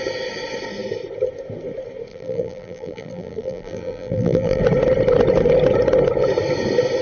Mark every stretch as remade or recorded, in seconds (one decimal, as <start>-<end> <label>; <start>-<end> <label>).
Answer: 0.0-2.1 recorded; 2.1-4.6 remade; 4.6-7.0 recorded